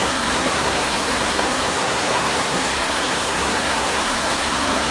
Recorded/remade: remade